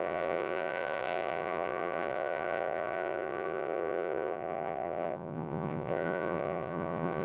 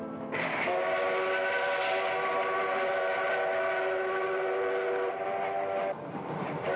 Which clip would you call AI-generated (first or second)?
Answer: first